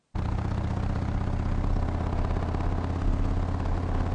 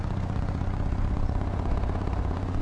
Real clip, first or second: first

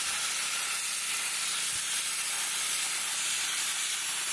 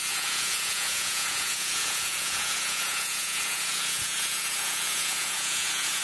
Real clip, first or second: first